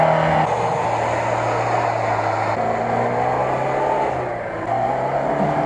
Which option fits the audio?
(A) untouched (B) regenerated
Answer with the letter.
A